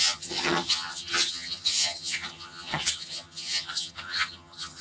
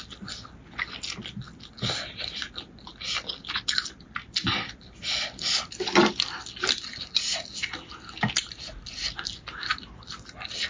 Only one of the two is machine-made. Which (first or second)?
first